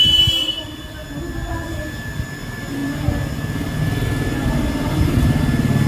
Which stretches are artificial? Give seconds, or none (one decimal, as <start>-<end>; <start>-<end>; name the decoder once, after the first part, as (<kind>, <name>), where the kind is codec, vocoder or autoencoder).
none